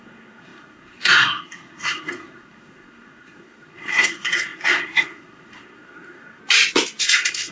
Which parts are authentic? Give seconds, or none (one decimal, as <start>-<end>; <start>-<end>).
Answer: 6.4-7.0